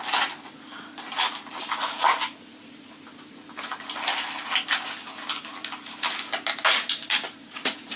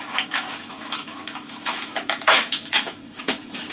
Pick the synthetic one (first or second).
second